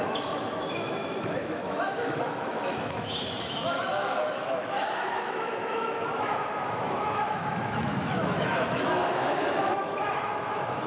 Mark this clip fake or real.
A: fake